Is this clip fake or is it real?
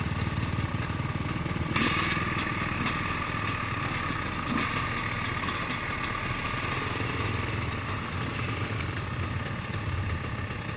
real